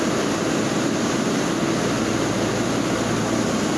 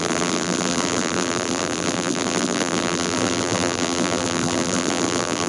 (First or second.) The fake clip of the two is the second